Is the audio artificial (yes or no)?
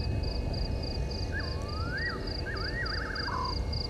no